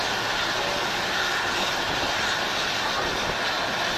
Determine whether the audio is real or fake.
real